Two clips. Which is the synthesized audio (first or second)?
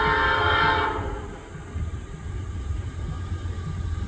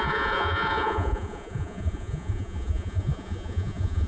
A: second